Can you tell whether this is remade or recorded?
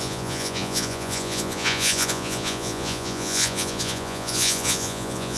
remade